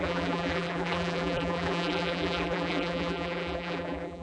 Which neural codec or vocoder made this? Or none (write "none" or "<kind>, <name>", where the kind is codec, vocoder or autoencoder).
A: vocoder, BigVGAN v2